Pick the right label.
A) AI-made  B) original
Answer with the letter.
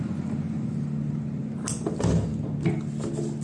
B